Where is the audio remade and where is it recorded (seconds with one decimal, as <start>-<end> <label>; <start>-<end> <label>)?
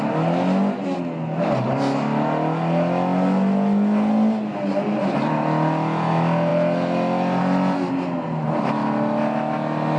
0.0-10.0 recorded